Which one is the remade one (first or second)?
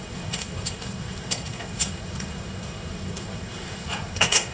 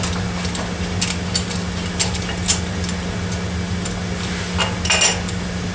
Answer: first